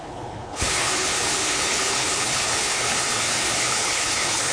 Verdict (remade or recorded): remade